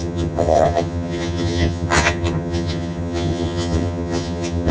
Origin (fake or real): fake